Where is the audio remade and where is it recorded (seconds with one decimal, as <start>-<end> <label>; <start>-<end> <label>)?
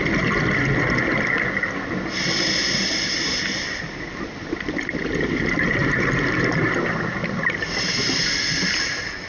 0.0-5.8 recorded; 5.8-6.6 remade; 6.6-9.3 recorded